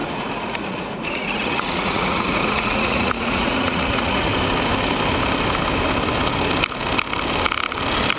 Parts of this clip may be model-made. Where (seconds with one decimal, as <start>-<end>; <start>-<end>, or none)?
0.0-4.3